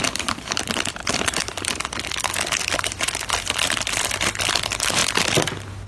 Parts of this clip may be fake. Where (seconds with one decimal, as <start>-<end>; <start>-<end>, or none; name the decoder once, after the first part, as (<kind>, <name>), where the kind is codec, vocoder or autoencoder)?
0.0-1.0 (vocoder, BigVGAN v2); 1.7-5.0